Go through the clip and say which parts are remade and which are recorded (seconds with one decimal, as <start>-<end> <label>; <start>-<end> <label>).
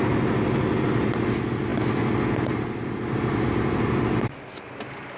0.0-5.2 recorded